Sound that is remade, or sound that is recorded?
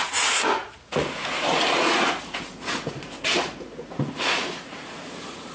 remade